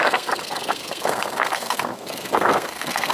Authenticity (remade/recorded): remade